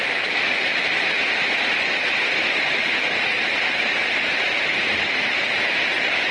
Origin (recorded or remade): remade